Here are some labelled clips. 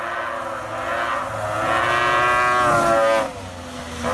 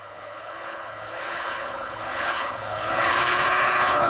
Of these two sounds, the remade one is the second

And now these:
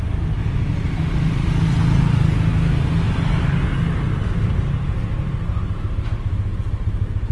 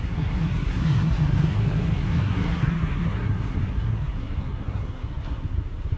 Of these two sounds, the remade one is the second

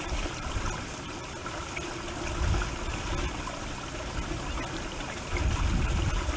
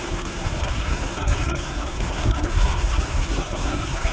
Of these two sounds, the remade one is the second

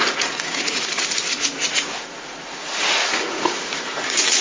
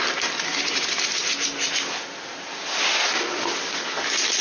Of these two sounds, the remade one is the first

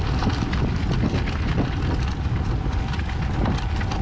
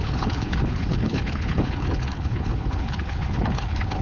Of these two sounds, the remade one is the second